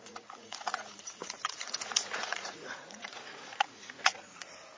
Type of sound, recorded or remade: remade